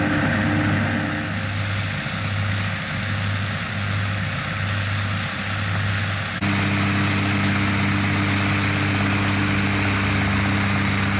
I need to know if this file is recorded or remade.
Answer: recorded